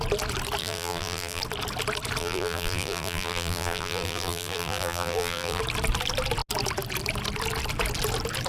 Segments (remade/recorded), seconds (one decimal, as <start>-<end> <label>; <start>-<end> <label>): 0.0-0.6 recorded; 0.6-1.4 remade; 1.4-2.2 recorded; 2.2-5.6 remade; 5.6-8.5 recorded